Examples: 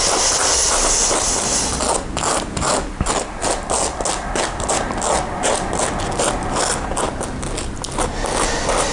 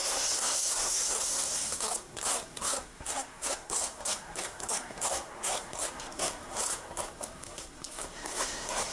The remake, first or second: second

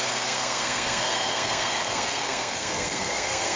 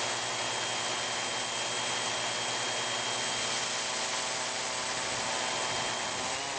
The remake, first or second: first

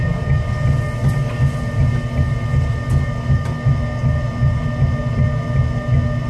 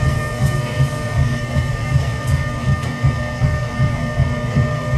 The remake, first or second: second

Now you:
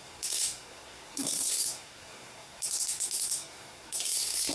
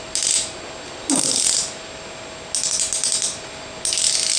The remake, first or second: first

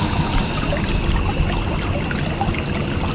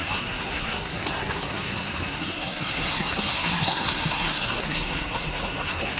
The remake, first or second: second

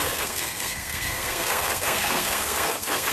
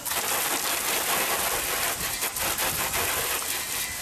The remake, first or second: first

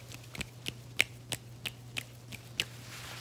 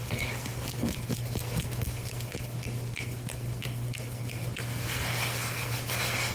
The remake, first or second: second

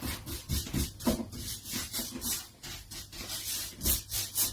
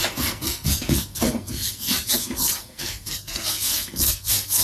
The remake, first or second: second